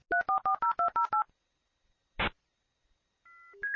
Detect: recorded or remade recorded